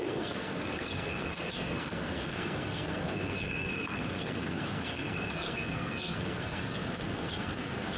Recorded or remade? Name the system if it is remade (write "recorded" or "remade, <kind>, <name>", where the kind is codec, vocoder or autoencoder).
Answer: remade, codec, SNAC